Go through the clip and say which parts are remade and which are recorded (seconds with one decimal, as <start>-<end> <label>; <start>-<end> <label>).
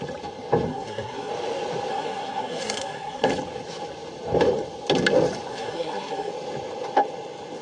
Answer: 0.0-0.7 recorded; 0.7-1.3 remade; 1.3-1.9 recorded; 1.9-3.3 remade; 3.3-5.5 recorded; 5.5-6.3 remade; 6.3-7.6 recorded